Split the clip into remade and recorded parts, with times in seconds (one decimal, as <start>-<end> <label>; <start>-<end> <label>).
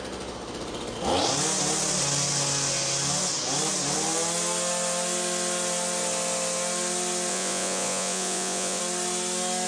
0.0-7.3 recorded; 7.3-8.8 remade; 8.8-9.7 recorded